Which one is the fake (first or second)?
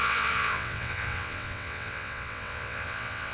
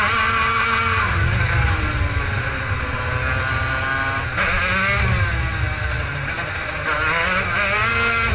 first